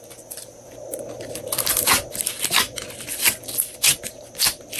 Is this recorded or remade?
recorded